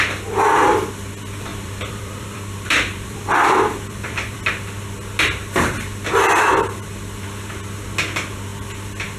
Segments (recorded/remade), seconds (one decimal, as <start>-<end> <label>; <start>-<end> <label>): 0.0-1.5 recorded; 1.5-4.5 remade; 4.5-9.2 recorded